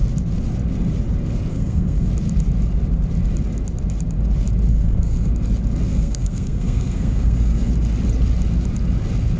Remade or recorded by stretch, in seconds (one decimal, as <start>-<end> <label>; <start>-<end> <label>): 0.0-1.5 recorded; 1.5-2.1 remade; 2.1-4.7 recorded; 4.7-5.3 remade; 5.3-5.9 recorded; 5.9-7.7 remade; 7.7-9.4 recorded